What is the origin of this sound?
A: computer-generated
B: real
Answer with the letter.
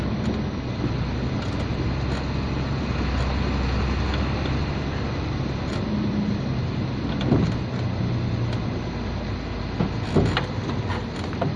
B